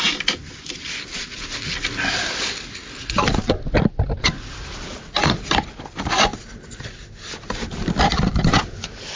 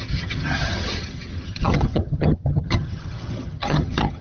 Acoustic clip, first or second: first